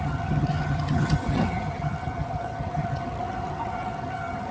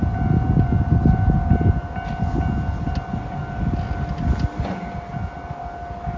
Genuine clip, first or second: second